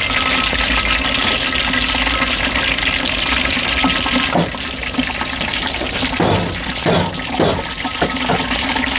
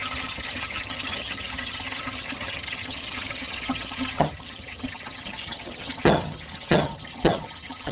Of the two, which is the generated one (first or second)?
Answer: second